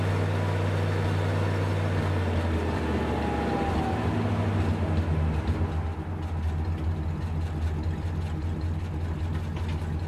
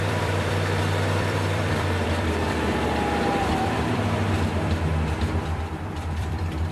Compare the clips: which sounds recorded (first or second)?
first